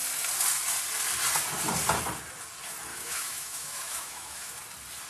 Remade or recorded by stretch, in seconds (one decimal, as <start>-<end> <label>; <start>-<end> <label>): 0.0-2.9 recorded; 2.9-4.5 remade; 4.5-5.1 recorded